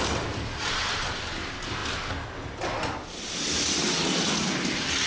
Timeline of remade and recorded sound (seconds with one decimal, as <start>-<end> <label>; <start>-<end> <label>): 0.0-5.1 recorded